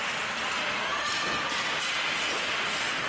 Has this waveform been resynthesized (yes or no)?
no